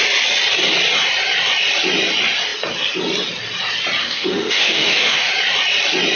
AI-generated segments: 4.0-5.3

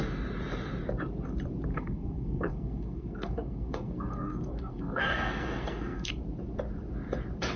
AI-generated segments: 1.7-6.1